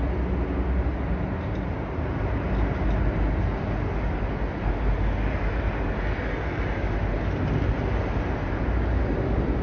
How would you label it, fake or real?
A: real